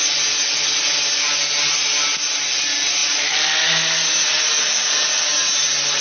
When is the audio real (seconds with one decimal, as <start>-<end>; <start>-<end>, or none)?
0.0-6.0